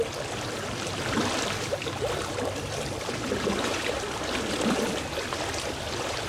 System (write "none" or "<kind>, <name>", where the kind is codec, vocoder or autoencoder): vocoder, BigVGAN v2